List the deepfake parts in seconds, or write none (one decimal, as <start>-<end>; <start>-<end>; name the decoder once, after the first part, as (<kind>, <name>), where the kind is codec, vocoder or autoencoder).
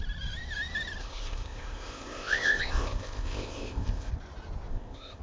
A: 1.0-4.1 (codec, ZipCodec); 4.7-5.2